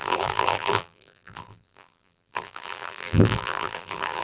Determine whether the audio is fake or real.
fake